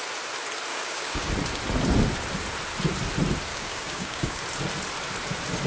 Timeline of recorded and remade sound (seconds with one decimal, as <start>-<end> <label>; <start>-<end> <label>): 0.0-0.7 recorded; 0.7-1.3 remade; 1.3-3.5 recorded; 3.5-4.4 remade; 4.4-5.7 recorded